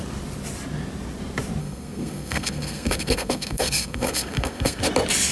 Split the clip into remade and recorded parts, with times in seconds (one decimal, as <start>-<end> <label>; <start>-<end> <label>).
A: 0.0-1.6 recorded; 1.6-4.8 remade; 4.8-5.3 recorded